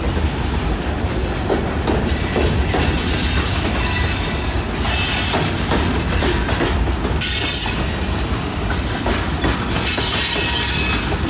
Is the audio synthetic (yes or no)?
no